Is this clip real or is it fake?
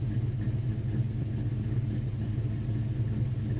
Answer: real